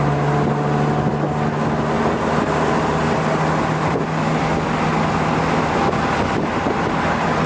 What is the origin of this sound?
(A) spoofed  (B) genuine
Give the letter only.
B